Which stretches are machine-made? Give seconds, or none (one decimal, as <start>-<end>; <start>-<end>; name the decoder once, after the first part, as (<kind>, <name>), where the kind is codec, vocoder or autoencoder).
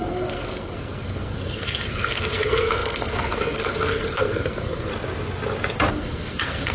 0.0-4.9 (codec, SNAC); 5.9-6.7